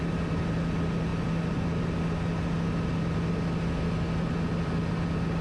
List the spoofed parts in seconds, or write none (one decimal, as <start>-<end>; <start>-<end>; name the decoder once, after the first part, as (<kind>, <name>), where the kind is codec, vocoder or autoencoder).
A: none

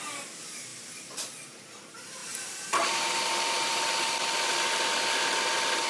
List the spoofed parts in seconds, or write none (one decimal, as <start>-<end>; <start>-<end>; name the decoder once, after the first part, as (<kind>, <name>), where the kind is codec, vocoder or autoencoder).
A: 0.7-1.8 (vocoder, BigVGAN v2); 2.2-5.9

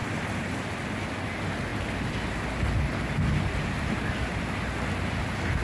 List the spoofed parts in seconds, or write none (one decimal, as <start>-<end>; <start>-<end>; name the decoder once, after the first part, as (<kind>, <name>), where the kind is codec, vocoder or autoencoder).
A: 0.0-0.7 (vocoder, BigVGAN v2)

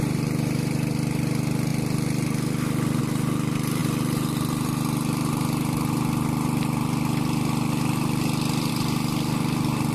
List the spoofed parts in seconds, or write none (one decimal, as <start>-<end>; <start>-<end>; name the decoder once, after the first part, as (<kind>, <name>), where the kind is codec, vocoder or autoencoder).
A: none

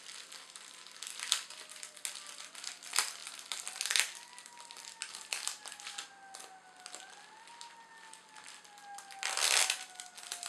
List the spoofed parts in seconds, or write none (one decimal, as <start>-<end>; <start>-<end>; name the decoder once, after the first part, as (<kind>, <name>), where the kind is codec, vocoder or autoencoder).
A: none

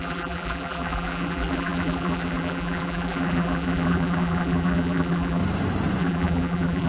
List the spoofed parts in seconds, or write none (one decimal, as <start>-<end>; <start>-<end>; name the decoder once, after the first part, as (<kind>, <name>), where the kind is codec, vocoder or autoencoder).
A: 0.0-5.4 (vocoder, BigVGAN v2); 6.0-6.9

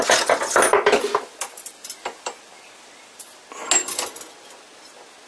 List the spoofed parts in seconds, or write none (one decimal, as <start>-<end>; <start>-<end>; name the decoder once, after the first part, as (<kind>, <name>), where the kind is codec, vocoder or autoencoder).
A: 0.7-3.4 (vocoder, BigVGAN v2)

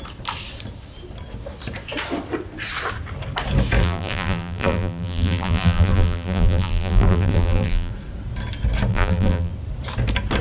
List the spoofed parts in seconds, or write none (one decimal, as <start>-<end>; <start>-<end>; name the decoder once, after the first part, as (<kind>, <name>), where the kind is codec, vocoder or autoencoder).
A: 3.8-7.9 (vocoder, BigVGAN v2); 8.9-9.5